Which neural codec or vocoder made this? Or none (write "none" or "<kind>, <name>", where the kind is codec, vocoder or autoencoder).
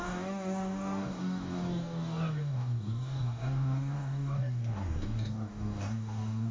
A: codec, DAC